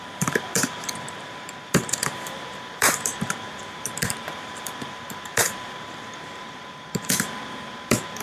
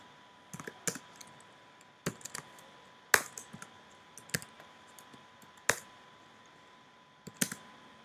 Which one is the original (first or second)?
second